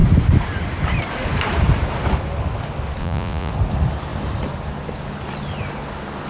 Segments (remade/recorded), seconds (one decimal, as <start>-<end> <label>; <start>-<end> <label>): 0.0-3.0 recorded; 3.0-3.5 remade; 3.5-6.3 recorded